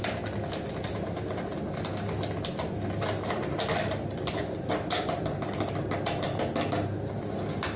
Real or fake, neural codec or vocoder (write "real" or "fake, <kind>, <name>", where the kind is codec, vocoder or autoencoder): real